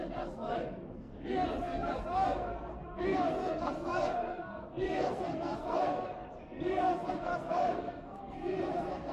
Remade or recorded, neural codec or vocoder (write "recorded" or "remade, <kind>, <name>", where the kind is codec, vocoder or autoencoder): remade, codec, SNAC